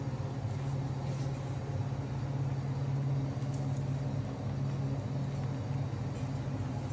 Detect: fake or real real